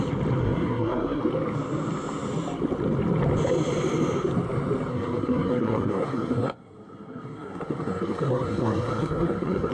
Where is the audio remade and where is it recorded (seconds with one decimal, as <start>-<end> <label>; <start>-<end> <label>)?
0.0-0.4 recorded; 0.4-1.2 remade; 1.2-4.9 recorded; 4.9-9.7 remade